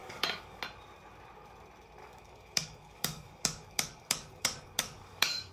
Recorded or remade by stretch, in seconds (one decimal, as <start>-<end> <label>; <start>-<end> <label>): 0.0-0.6 remade; 0.6-2.0 recorded; 2.0-5.5 remade